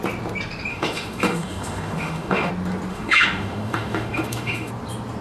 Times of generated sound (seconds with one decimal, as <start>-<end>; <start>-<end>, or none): 0.7-2.5; 2.9-4.7